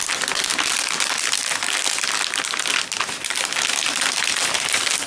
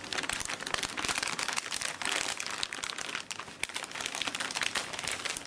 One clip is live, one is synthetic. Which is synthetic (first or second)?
second